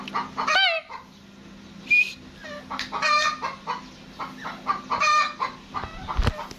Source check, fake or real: real